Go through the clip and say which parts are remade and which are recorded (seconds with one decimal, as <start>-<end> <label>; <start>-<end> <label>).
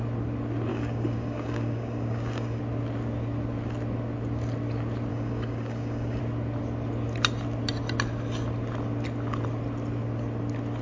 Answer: 0.0-0.7 recorded; 0.7-2.6 remade; 2.6-5.1 recorded; 5.1-6.2 remade; 6.2-10.8 recorded